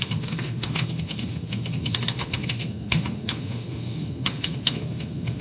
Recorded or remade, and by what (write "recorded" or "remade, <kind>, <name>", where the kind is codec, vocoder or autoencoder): remade, autoencoder, DAC-VAE